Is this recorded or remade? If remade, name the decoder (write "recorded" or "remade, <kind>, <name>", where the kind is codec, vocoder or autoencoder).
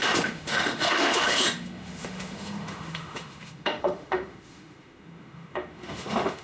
remade, autoencoder, DAC-VAE